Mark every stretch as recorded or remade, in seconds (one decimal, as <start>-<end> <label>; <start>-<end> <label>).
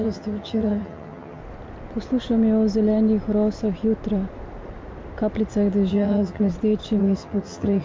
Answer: 0.0-1.4 remade; 1.4-5.9 recorded; 5.9-6.5 remade; 6.5-7.0 recorded; 7.0-7.8 remade